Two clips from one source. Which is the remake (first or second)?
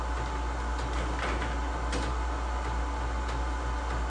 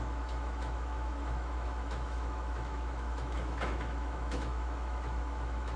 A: second